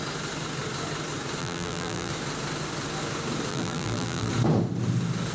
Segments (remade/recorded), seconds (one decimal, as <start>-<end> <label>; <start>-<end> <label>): 0.0-1.4 recorded; 1.4-2.1 remade; 2.1-3.5 recorded; 3.5-4.3 remade; 4.3-5.3 recorded